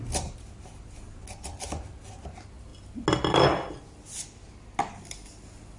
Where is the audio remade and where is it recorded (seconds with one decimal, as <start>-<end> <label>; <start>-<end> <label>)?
0.0-5.8 recorded